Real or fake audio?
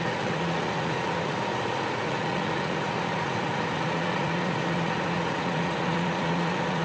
fake